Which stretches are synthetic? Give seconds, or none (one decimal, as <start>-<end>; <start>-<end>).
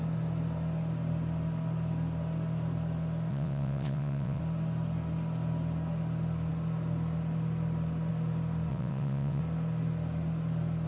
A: 3.3-4.4; 8.7-9.4